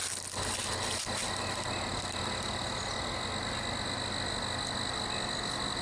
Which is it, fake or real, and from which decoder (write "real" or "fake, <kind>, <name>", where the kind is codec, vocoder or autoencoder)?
real